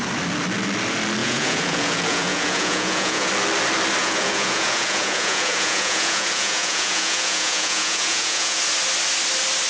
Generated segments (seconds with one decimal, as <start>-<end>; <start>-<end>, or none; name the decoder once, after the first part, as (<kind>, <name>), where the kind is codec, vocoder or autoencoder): 1.2-3.3 (vocoder, Vocos); 4.0-8.6